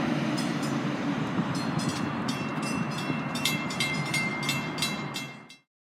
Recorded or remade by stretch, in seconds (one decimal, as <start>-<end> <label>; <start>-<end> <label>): 0.0-4.3 remade; 4.3-5.9 recorded